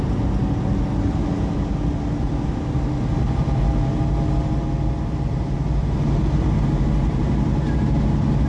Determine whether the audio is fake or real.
real